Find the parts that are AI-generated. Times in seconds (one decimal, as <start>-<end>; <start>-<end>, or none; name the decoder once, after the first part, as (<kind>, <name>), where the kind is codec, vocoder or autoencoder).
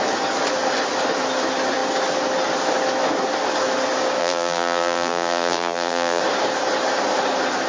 4.2-6.2 (vocoder, BigVGAN v2)